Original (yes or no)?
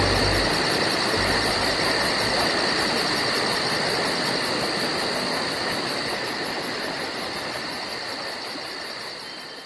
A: yes